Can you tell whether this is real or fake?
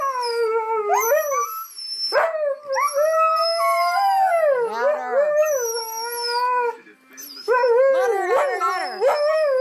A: real